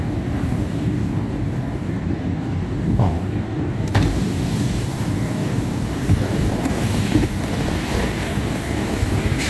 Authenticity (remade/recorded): remade